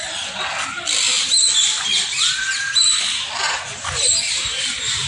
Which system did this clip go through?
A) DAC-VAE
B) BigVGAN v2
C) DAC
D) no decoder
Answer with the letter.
D